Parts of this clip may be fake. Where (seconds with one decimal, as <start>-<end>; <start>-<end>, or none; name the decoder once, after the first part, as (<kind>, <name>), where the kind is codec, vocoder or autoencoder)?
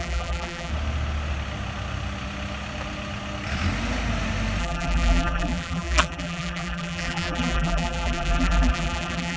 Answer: 0.0-0.7 (vocoder, BigVGAN v2); 4.6-9.4